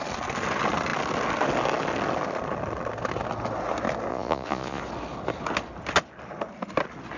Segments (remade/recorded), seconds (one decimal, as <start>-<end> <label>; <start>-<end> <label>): 0.0-4.1 recorded; 4.1-4.8 remade; 4.8-7.2 recorded